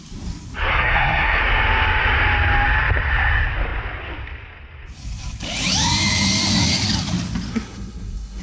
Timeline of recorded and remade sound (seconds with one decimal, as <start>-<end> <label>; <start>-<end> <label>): 0.0-0.7 recorded; 0.7-1.4 remade; 1.4-7.5 recorded; 7.5-8.4 remade